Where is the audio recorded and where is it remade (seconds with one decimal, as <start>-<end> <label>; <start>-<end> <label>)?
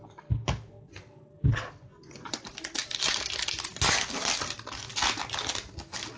0.0-1.8 recorded; 1.8-2.4 remade; 2.4-6.2 recorded